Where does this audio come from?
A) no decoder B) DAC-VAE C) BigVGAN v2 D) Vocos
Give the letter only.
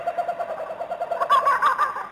A